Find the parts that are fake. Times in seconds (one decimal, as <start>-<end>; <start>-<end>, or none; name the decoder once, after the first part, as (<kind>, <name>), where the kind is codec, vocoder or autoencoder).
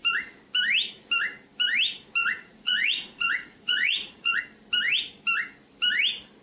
2.2-4.4 (vocoder, Vocos)